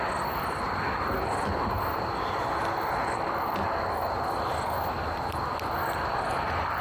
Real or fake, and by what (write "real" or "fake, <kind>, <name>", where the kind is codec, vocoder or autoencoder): real